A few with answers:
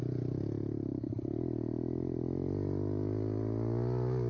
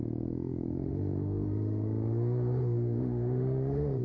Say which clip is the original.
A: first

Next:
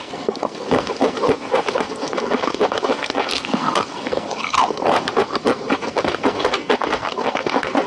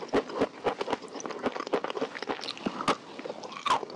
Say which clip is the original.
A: second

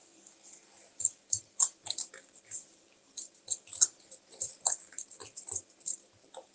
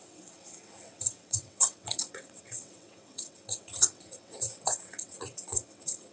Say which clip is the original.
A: first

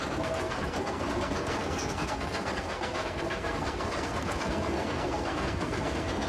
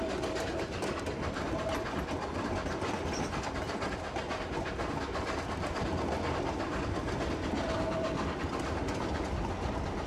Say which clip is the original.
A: second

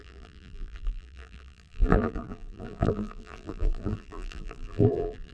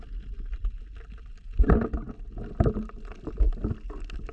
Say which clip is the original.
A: second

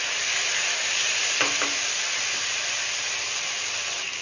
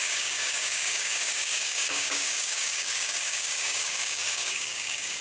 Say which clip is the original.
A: first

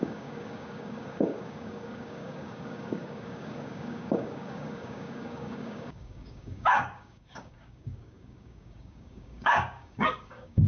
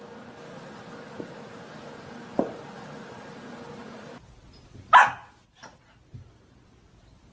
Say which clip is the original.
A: second